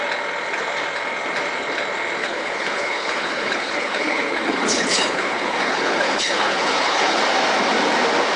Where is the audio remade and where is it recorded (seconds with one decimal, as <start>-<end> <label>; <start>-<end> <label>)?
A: 0.0-2.2 recorded; 2.2-7.2 remade; 7.2-8.4 recorded